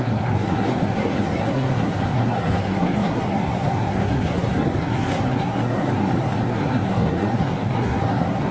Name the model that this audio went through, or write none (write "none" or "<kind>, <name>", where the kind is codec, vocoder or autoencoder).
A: codec, SNAC